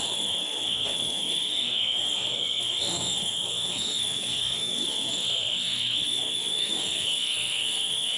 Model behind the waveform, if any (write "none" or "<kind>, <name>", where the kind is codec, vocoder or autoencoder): codec, SNAC